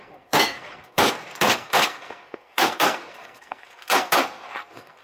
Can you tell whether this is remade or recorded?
remade